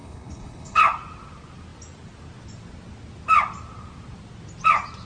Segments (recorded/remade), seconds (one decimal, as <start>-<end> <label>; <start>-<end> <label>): 0.0-0.8 remade; 0.8-5.1 recorded